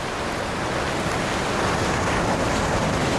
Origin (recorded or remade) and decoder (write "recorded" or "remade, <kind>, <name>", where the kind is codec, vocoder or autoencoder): recorded